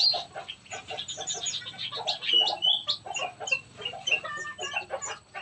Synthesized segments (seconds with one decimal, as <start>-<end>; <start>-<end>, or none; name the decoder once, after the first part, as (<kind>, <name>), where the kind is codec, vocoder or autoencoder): none